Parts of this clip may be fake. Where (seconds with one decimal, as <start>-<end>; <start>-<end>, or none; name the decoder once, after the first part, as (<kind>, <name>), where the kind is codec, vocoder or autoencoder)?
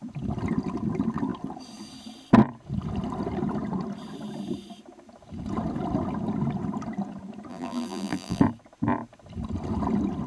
7.5-8.4 (vocoder, BigVGAN v2)